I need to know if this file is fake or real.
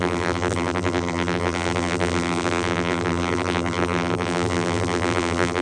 fake